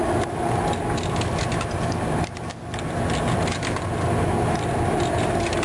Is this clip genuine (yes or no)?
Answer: yes